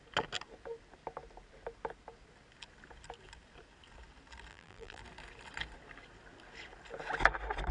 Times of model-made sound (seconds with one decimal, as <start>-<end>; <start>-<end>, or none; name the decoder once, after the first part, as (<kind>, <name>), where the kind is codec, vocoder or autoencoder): 4.5-5.0 (vocoder, BigVGAN v2)